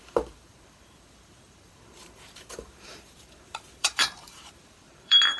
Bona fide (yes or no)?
no